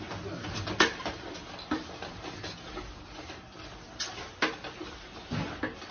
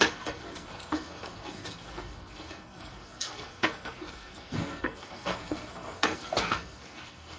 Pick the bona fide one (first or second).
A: first